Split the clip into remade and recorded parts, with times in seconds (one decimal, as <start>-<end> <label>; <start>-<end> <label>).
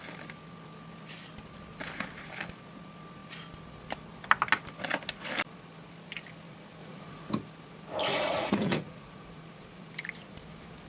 0.0-6.8 recorded; 6.8-7.3 remade; 7.3-8.1 recorded; 8.1-9.4 remade; 9.4-10.9 recorded